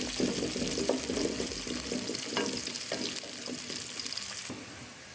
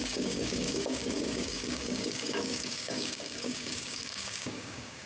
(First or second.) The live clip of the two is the first